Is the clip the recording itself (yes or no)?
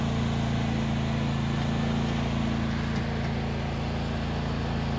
yes